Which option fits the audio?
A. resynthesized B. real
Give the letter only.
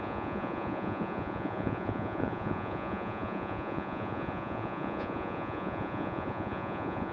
A